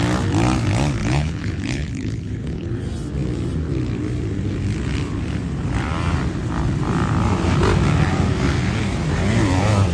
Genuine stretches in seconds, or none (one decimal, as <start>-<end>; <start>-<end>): 0.0-1.0; 2.8-9.9